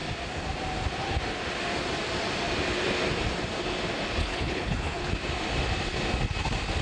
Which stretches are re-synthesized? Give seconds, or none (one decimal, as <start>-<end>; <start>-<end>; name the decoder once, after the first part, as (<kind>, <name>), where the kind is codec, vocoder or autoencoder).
4.2-5.1 (codec, HILCodec)